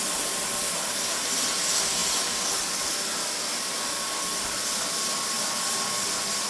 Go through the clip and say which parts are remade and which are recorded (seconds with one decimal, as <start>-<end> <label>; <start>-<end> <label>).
0.0-6.5 recorded